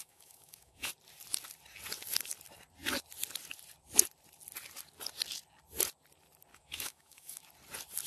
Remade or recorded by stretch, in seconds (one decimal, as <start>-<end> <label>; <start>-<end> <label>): 0.0-0.9 remade; 0.9-6.5 recorded; 6.5-7.4 remade; 7.4-8.1 recorded